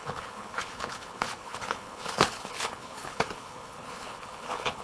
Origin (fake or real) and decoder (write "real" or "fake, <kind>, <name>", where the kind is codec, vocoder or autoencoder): fake, codec, HILCodec